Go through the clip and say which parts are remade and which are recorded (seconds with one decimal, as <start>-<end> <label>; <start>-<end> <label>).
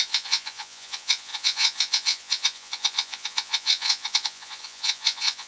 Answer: 0.0-5.5 remade